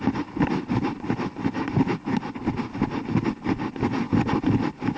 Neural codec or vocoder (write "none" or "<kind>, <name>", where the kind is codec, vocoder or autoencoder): none